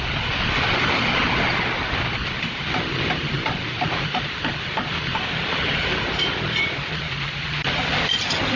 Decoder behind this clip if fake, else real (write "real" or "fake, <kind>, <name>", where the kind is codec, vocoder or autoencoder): real